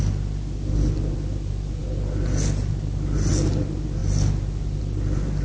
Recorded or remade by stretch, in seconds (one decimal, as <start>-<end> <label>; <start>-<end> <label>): 0.0-5.4 recorded